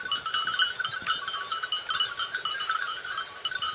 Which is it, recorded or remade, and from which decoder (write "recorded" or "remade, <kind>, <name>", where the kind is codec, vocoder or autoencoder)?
recorded